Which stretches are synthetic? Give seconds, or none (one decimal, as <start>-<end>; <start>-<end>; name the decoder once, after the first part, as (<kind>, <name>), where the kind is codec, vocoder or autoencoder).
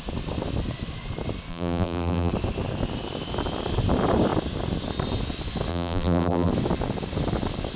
1.5-2.3 (vocoder, BigVGAN v2); 5.7-6.5